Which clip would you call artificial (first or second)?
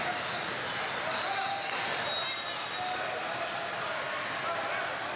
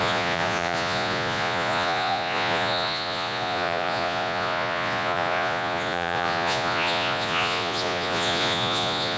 second